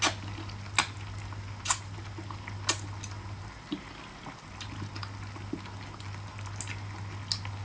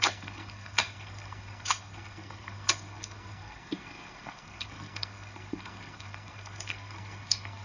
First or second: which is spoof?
second